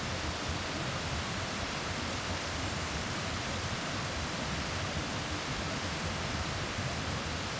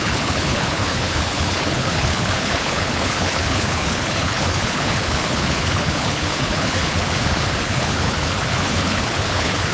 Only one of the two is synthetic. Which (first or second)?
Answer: second